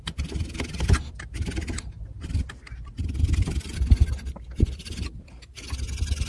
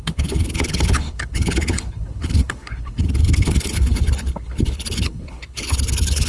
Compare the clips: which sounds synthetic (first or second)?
second